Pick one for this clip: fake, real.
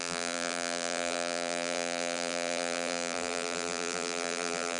fake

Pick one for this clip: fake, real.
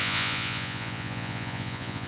fake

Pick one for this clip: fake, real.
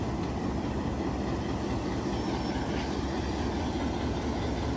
real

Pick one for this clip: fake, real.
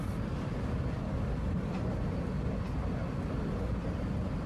real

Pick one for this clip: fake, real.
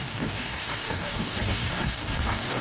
fake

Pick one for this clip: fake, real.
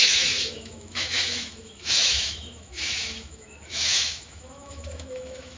fake